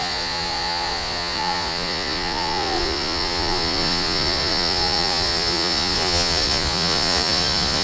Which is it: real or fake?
fake